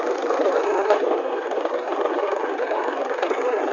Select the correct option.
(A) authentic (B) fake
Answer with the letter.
B